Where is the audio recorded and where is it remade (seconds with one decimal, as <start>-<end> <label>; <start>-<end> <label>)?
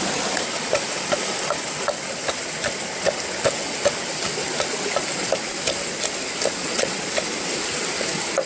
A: 0.0-6.6 recorded; 6.6-7.1 remade; 7.1-8.5 recorded